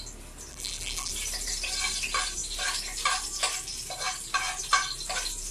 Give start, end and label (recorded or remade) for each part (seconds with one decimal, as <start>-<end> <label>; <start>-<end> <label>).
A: 0.0-0.5 recorded; 0.5-1.1 remade; 1.1-5.5 recorded